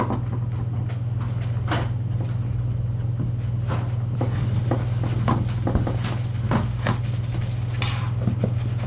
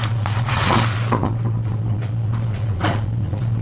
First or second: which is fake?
second